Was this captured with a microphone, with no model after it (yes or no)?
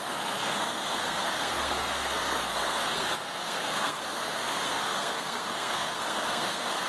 no